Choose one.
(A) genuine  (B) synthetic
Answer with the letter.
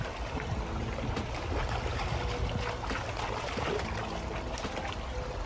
A